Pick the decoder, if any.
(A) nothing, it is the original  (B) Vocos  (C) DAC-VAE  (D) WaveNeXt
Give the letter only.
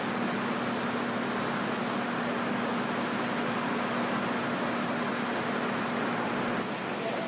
A